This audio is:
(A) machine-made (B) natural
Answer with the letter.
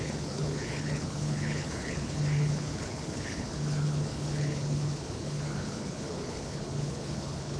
A